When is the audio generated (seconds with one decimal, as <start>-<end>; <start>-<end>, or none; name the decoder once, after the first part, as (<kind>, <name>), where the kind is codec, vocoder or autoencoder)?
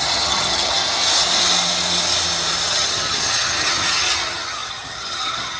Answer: 0.0-0.8 (vocoder, HiFi-GAN); 2.7-5.6